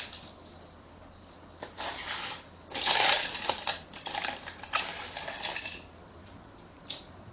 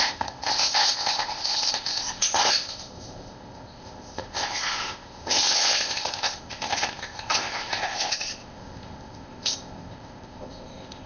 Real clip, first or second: first